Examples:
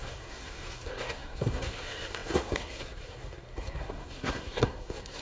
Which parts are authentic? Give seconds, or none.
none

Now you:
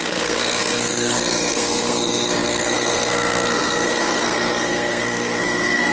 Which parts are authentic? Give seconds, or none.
none

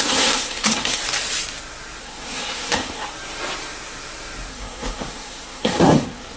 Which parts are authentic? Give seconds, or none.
1.0-2.0; 3.0-4.5

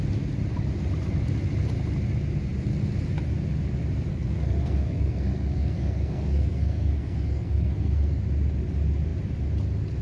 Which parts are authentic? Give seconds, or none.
0.0-4.1; 8.2-10.0

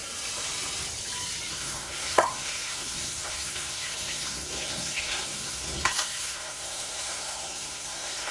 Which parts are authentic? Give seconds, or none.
0.0-1.5

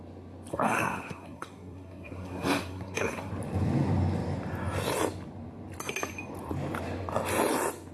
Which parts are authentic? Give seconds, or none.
0.0-0.5; 3.3-7.9

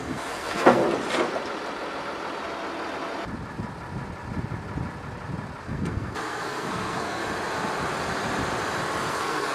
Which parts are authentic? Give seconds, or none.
0.8-5.6; 7.2-9.1

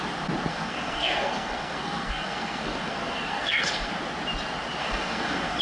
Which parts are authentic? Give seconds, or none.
0.0-0.5; 3.9-4.8